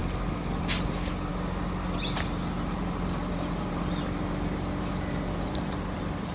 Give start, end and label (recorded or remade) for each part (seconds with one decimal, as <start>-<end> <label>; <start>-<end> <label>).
0.0-3.2 recorded; 3.2-6.3 remade